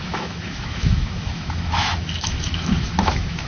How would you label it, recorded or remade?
remade